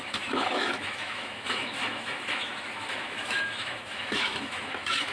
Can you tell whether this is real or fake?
fake